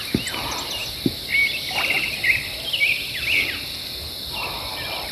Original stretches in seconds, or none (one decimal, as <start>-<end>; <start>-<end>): 0.0-5.1